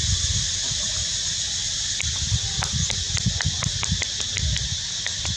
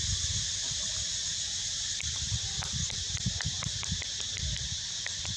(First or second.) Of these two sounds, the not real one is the second